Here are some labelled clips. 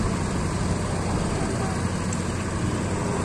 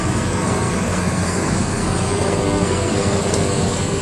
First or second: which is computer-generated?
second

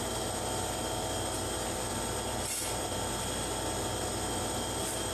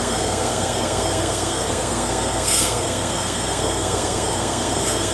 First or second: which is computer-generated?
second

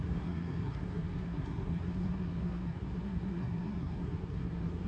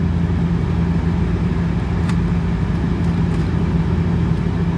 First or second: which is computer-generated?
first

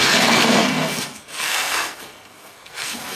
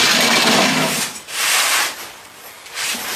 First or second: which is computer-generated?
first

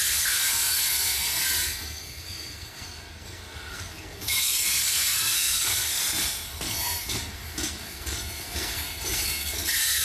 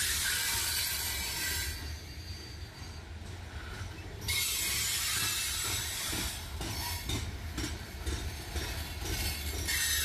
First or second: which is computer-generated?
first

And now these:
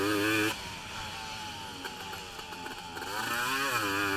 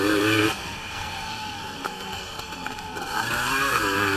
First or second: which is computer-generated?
second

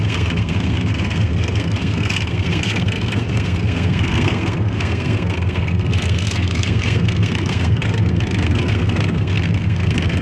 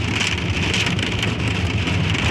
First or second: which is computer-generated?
first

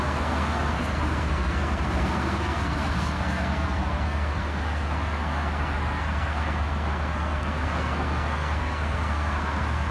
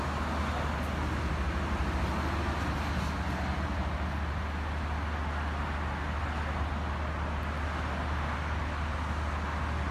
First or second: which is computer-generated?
first